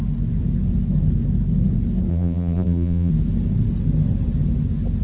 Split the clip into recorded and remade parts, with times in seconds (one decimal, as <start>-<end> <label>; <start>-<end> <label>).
0.0-2.1 recorded; 2.1-3.1 remade; 3.1-5.0 recorded